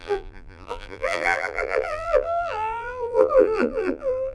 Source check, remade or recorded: remade